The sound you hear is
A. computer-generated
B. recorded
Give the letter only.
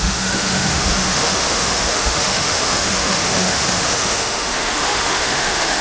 A